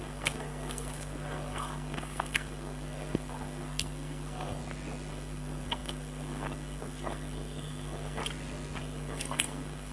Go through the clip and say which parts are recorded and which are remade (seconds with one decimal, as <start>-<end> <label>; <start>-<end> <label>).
0.0-4.6 remade; 4.6-5.1 recorded; 5.1-8.2 remade; 8.2-8.8 recorded; 8.8-9.9 remade